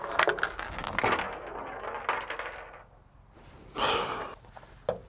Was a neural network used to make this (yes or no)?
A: no